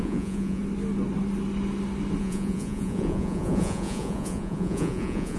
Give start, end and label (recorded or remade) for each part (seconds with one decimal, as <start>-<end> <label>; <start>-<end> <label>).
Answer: 0.0-0.6 remade; 0.6-2.2 recorded; 2.2-5.4 remade